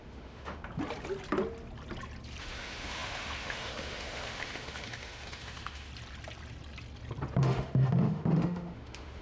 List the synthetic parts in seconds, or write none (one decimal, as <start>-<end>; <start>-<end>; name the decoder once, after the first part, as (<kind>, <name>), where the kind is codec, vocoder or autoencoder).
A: 0.0-0.6 (autoencoder, DAC-VAE); 2.4-5.9; 7.4-9.2